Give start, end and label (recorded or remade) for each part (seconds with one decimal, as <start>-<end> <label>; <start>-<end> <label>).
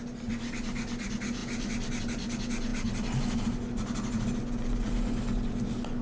0.0-6.0 recorded